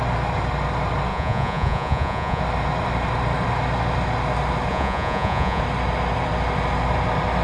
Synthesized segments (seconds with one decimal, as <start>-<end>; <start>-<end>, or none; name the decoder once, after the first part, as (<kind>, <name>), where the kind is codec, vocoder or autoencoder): 1.1-2.4 (vocoder, Vocos); 4.7-5.6

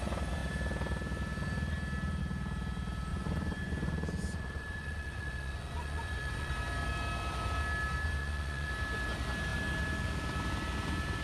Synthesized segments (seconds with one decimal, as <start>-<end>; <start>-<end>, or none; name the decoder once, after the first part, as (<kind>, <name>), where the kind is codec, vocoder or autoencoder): 3.1-6.5 (vocoder, Vocos); 8.2-8.7

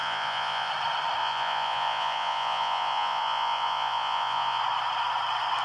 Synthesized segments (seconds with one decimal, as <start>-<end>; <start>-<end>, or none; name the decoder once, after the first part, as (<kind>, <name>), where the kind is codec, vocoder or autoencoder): 0.0-0.7 (vocoder, Vocos); 1.2-4.6

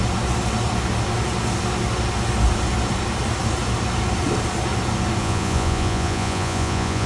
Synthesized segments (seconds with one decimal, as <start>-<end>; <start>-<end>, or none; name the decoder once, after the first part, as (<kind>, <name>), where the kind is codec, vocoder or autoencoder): 5.2-7.1 (vocoder, Vocos)